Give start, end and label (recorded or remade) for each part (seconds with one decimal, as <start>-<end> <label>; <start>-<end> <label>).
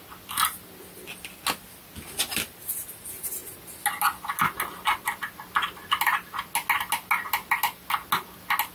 0.0-8.7 recorded